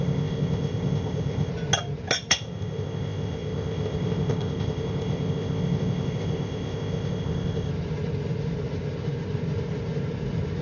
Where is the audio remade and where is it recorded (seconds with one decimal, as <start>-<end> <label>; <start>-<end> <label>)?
0.0-1.5 remade; 1.5-2.3 recorded; 2.3-7.7 remade; 7.7-10.6 recorded